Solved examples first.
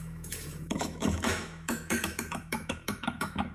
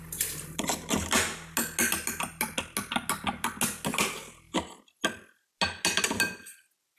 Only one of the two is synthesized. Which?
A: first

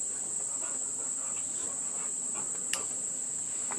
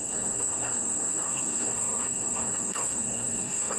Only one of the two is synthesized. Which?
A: second